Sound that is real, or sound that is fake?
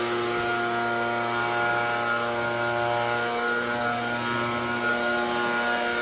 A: real